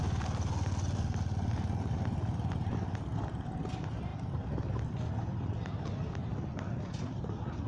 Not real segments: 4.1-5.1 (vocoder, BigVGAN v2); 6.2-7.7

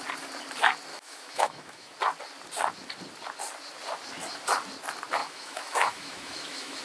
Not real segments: 0.9-2.0 (autoencoder, DAC-VAE); 5.2-6.8

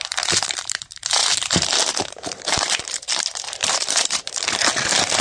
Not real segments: 0.0-5.2 (vocoder, BigVGAN v2)